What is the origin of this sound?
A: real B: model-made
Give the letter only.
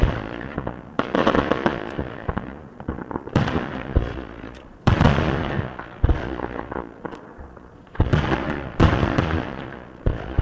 B